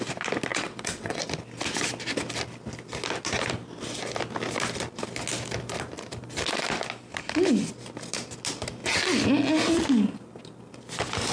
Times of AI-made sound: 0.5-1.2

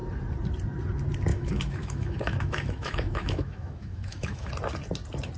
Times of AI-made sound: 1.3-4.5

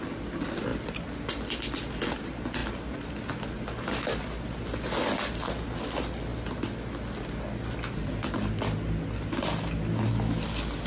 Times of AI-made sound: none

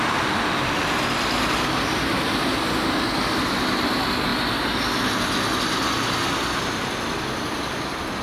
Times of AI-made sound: none

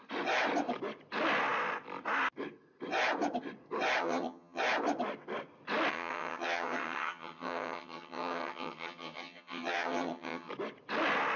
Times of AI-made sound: 4.0-4.6; 5.9-10.5

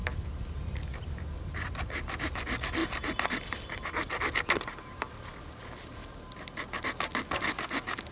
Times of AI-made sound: none